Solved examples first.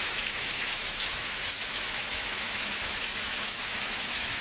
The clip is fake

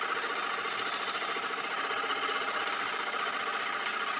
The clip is real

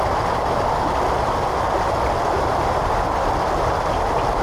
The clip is real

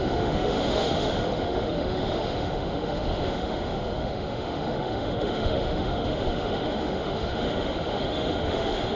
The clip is fake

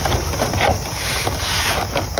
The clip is real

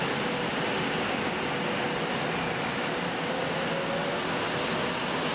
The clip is real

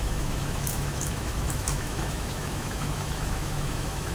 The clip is fake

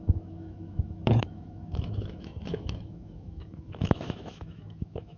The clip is fake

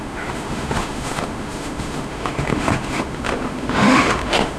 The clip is fake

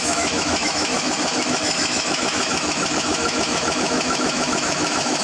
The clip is fake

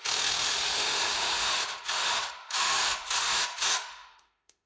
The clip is fake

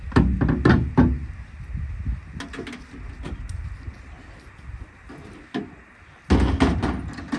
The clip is real